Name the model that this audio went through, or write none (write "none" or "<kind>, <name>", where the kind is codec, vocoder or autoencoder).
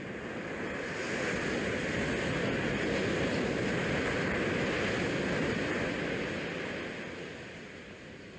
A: none